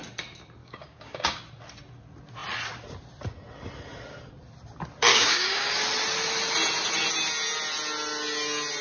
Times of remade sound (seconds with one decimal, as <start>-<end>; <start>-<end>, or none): 0.6-1.4; 5.1-5.8